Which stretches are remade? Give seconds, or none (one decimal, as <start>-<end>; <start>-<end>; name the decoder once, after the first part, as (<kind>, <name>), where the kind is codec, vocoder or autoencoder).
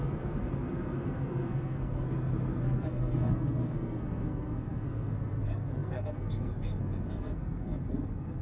0.0-8.4 (codec, SNAC)